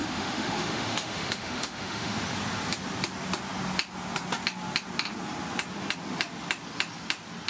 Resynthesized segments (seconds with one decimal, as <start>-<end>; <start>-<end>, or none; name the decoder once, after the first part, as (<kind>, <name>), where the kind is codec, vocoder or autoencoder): 0.0-2.2 (autoencoder, DAC-VAE)